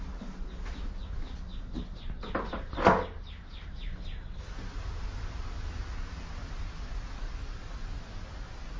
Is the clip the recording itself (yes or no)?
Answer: yes